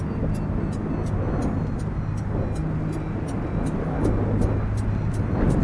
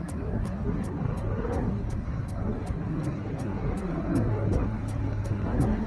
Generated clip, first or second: second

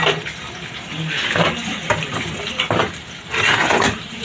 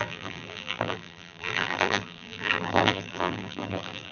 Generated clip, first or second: second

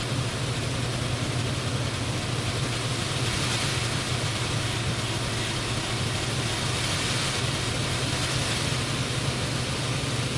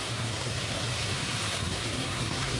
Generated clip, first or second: second